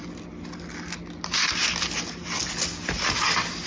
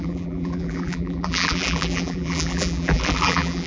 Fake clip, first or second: second